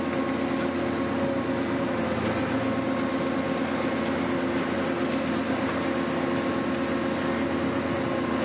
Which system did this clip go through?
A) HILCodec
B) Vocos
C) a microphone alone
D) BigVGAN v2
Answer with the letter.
C